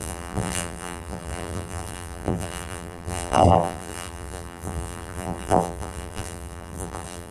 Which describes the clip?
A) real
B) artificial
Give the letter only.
B